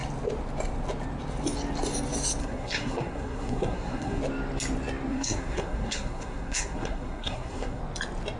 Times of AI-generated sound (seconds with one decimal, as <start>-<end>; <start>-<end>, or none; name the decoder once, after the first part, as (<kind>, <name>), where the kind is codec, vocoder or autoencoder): 2.4-4.2 (codec, SNAC); 5.1-7.8